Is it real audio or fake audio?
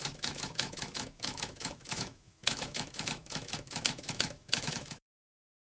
fake